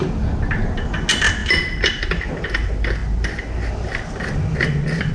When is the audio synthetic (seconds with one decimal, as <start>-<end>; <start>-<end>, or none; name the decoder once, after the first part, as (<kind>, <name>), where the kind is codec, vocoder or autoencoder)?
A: 1.4-2.3 (vocoder, BigVGAN v2)